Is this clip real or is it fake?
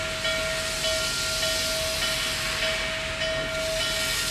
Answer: real